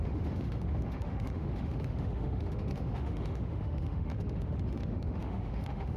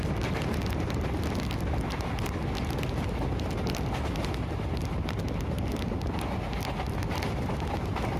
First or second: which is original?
second